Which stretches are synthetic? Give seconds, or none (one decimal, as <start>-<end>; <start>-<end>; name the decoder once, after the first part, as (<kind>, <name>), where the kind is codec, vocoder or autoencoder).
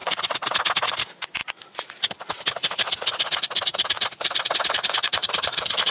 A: 0.0-0.5 (vocoder, BigVGAN v2); 3.7-5.9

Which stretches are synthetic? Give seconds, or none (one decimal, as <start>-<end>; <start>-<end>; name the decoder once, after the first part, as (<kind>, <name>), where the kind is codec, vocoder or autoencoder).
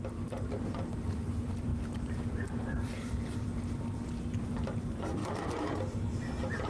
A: 0.0-6.7 (vocoder, BigVGAN v2)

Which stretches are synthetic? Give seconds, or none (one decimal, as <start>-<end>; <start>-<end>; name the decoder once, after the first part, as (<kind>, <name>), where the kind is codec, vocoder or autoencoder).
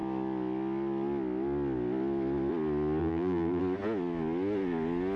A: 3.0-3.6 (vocoder, BigVGAN v2)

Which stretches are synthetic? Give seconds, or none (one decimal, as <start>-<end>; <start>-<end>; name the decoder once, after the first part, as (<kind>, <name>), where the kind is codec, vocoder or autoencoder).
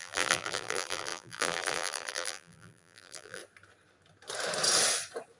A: 0.0-3.4 (vocoder, BigVGAN v2)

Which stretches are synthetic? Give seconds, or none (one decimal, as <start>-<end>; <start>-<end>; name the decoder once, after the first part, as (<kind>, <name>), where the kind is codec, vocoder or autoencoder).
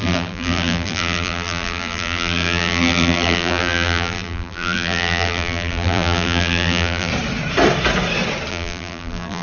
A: 0.0-7.1 (vocoder, BigVGAN v2); 8.5-9.4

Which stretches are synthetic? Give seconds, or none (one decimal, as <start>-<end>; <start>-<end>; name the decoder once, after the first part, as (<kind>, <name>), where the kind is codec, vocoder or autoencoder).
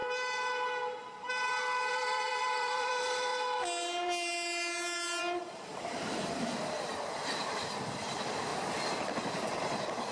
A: 1.9-3.3 (vocoder, BigVGAN v2); 5.2-8.5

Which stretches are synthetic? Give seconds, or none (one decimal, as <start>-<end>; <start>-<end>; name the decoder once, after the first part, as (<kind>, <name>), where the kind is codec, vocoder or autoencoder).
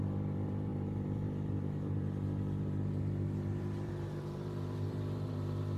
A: 0.0-5.8 (vocoder, BigVGAN v2)